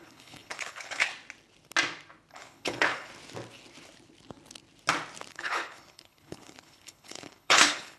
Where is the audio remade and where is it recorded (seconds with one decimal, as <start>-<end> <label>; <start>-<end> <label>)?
0.0-1.1 remade; 1.1-2.3 recorded; 2.3-3.1 remade; 3.1-5.3 recorded; 5.3-8.0 remade